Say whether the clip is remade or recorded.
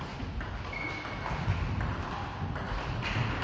recorded